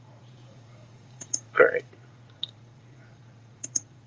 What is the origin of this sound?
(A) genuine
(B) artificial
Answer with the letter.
B